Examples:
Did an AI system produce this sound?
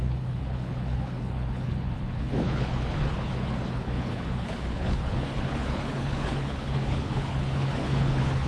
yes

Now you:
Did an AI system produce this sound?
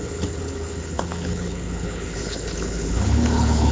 yes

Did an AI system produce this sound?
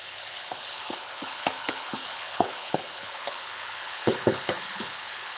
yes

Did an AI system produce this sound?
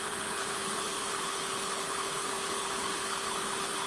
yes